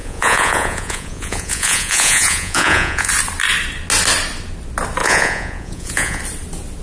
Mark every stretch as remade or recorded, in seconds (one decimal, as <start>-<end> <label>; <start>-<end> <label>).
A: 0.0-3.1 remade; 3.1-5.0 recorded; 5.0-6.2 remade; 6.2-6.8 recorded